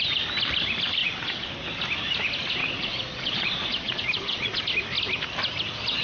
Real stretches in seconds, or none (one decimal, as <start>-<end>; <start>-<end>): 0.0-1.0; 1.5-2.6; 4.6-6.0